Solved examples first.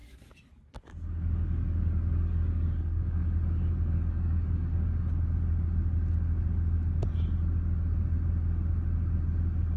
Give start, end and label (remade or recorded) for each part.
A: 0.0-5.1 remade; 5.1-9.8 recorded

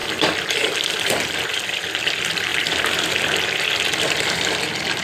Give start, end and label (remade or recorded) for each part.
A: 0.0-0.9 recorded; 0.9-2.5 remade; 2.5-3.9 recorded; 3.9-5.0 remade

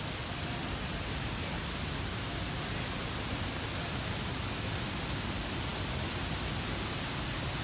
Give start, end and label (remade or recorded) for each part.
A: 0.0-7.6 recorded

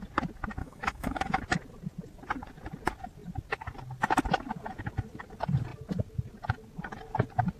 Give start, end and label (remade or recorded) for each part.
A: 0.0-0.6 recorded; 0.6-1.4 remade; 1.4-7.6 recorded

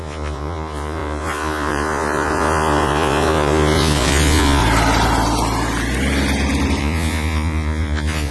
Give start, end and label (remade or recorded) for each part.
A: 0.0-4.6 remade; 4.6-6.8 recorded; 6.8-8.3 remade

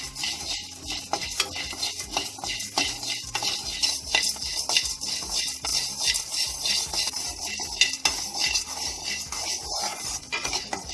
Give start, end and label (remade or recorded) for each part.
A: 0.0-9.9 recorded; 9.9-10.9 remade